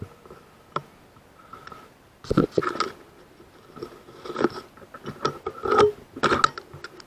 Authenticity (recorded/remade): recorded